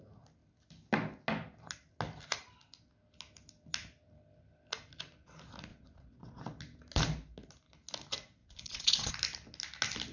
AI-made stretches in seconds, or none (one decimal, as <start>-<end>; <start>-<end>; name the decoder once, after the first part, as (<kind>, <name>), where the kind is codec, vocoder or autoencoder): 5.7-6.4 (vocoder, Vocos); 8.4-9.1

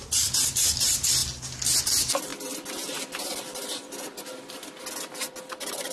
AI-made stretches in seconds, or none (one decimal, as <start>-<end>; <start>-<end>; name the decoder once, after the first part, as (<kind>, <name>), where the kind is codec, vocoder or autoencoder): none

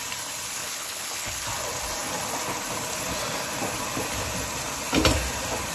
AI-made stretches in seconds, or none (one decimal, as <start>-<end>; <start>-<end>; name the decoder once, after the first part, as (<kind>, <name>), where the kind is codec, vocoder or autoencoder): 0.6-1.4 (codec, HILCodec)

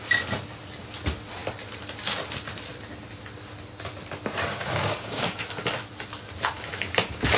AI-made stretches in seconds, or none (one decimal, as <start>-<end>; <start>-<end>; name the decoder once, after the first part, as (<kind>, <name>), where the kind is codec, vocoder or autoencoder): 4.5-5.4 (codec, DAC)